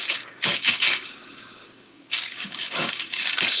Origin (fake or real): fake